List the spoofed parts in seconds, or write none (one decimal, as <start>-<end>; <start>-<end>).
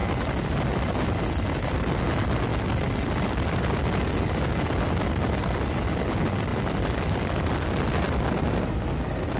none